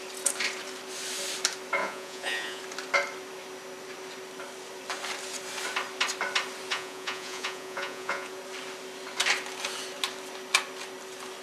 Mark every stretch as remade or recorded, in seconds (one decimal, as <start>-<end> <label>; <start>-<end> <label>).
0.0-1.8 recorded; 1.8-2.6 remade; 2.6-6.7 recorded; 6.7-8.3 remade; 8.3-11.4 recorded